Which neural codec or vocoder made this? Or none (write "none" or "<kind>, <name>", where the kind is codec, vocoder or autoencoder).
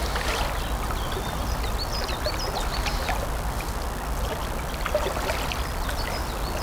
none